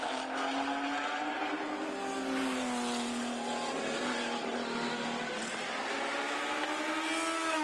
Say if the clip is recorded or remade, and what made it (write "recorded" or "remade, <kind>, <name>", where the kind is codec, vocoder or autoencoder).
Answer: recorded